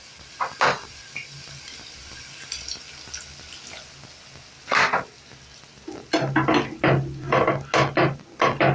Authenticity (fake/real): real